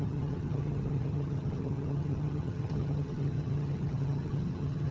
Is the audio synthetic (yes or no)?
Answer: yes